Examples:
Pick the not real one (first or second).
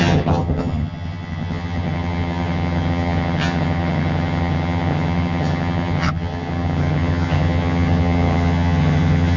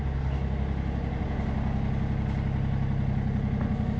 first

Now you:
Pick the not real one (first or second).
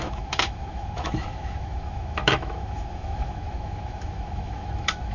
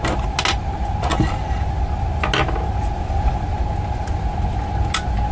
first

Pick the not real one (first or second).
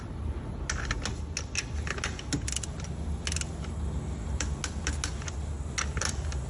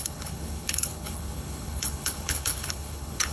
second